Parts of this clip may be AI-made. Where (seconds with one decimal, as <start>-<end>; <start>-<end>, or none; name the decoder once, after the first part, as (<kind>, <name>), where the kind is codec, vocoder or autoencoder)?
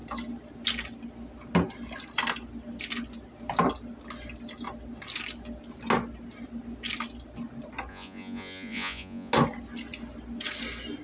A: 7.9-9.3 (vocoder, Vocos)